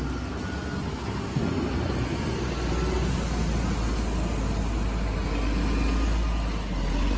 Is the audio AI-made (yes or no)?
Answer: no